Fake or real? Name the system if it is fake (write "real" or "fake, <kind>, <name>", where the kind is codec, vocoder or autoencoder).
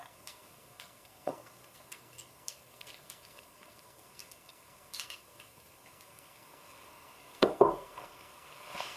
fake, codec, SNAC